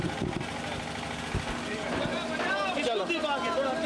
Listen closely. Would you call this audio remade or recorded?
recorded